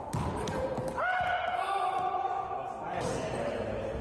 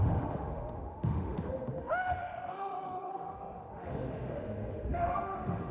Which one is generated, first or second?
second